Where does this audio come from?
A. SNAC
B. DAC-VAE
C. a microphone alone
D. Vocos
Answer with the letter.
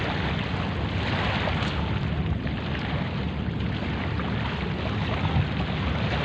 C